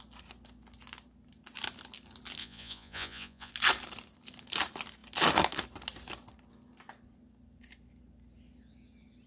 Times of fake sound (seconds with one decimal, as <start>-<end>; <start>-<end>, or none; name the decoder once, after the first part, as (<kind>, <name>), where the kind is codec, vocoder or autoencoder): 2.4-3.5 (vocoder, Vocos)